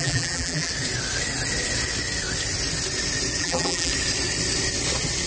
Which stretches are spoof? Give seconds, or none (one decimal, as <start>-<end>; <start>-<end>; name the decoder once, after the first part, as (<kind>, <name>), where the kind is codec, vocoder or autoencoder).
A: 0.0-0.7 (vocoder, BigVGAN v2); 3.4-3.9